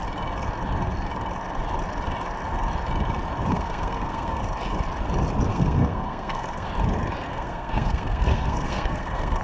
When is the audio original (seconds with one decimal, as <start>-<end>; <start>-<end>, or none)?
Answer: 0.0-3.5; 4.4-5.5; 6.7-7.3